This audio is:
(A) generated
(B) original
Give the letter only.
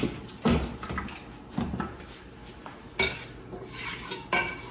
B